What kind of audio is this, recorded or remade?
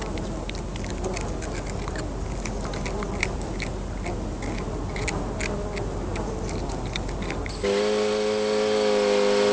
recorded